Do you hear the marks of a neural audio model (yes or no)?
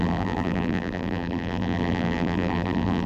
yes